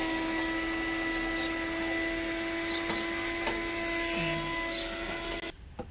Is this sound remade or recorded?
recorded